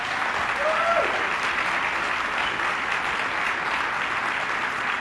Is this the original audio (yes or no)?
yes